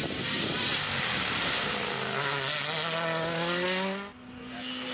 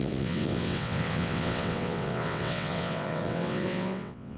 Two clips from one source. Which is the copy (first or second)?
second